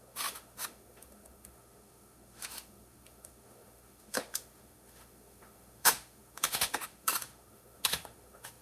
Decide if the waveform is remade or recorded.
remade